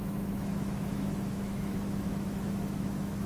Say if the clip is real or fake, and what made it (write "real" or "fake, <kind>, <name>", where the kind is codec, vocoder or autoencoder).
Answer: fake, autoencoder, DAC-VAE